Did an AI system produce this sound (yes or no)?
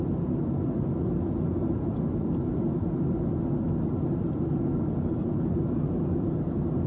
no